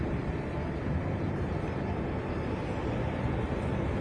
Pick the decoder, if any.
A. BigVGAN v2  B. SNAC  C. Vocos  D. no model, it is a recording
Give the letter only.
D